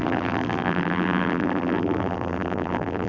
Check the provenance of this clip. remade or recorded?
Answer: remade